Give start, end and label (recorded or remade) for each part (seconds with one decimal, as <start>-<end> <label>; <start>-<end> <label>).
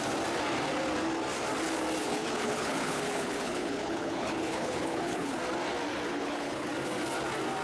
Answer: 0.0-2.0 recorded; 2.0-5.4 remade; 5.4-6.1 recorded; 6.1-6.7 remade; 6.7-7.6 recorded